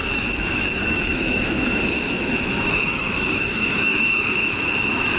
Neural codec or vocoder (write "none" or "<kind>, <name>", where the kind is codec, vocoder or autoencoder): autoencoder, DAC-VAE